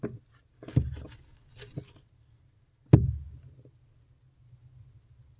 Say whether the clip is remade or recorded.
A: recorded